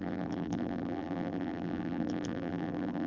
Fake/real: fake